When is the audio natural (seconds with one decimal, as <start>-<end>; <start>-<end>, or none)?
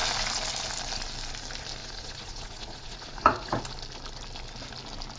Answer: 0.0-1.8; 3.6-5.2